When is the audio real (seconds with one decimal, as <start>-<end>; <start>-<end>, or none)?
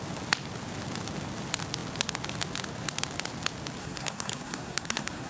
0.0-3.8